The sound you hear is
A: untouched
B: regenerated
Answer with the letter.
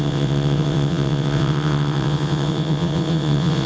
B